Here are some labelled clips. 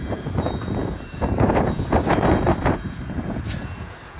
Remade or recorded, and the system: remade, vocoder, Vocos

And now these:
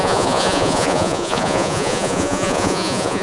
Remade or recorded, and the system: remade, vocoder, Vocos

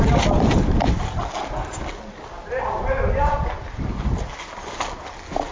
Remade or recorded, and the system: recorded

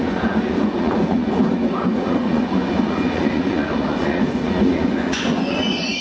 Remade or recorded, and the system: remade, vocoder, Vocos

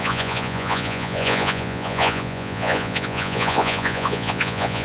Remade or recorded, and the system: remade, vocoder, Vocos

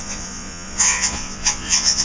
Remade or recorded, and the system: remade, vocoder, Vocos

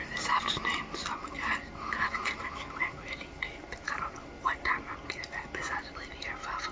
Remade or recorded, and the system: recorded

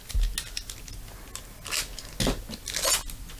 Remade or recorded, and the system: recorded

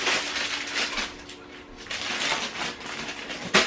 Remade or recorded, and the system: recorded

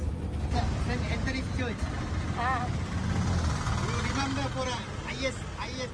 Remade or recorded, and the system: recorded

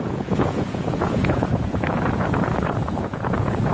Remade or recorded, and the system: remade, vocoder, Vocos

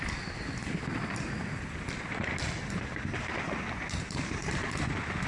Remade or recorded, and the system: recorded